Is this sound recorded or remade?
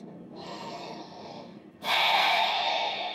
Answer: remade